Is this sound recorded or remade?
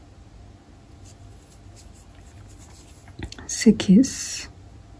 recorded